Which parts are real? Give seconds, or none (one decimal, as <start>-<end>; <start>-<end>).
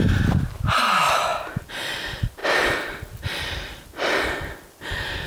0.0-1.3; 1.8-2.4; 3.2-5.3